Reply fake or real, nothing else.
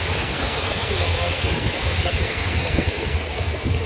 fake